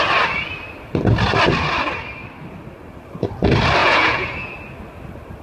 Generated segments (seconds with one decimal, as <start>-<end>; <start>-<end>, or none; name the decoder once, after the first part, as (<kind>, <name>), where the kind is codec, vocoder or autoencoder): 3.8-4.5 (vocoder, Vocos)